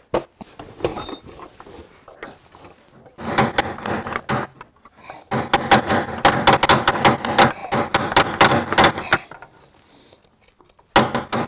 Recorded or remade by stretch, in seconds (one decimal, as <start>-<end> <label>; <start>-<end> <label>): 0.0-11.5 recorded